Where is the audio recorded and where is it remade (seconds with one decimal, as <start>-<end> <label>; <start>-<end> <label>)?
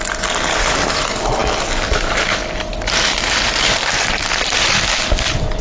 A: 0.0-5.6 recorded